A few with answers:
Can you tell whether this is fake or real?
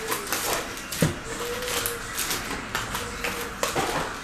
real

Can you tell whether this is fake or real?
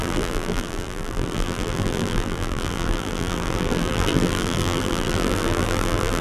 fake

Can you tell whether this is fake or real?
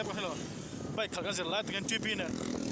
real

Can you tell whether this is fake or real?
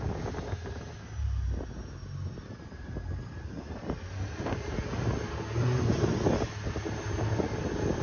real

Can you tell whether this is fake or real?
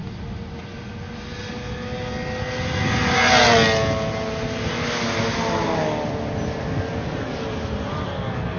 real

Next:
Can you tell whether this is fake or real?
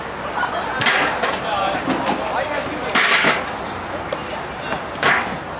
real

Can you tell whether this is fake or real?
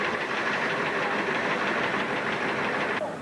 real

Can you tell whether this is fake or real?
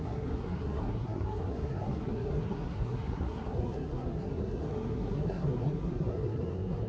fake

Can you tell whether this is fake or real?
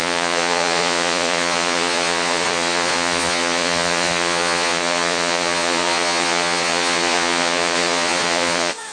fake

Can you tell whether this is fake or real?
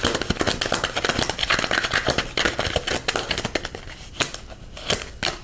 real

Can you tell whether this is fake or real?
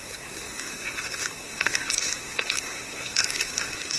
fake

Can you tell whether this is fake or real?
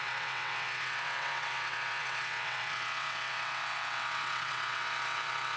fake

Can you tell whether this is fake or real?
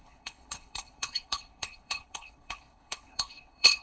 fake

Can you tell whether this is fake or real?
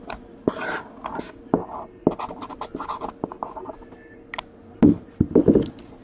real